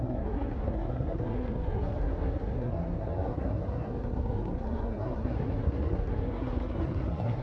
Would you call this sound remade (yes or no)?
yes